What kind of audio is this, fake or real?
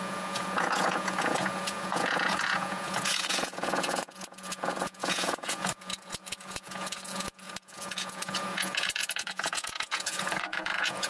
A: fake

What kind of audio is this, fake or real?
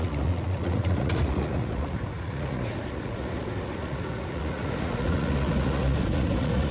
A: fake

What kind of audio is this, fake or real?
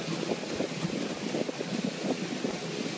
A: real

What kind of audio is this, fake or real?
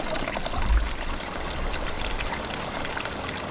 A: real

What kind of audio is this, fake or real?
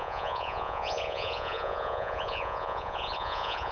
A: fake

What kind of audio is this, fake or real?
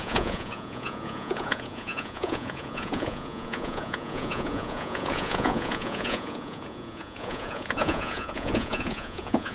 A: fake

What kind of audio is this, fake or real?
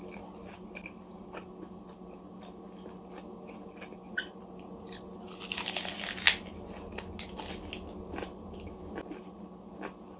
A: real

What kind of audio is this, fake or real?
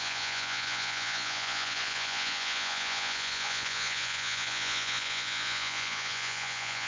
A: fake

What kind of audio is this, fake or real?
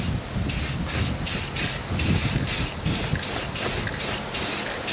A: real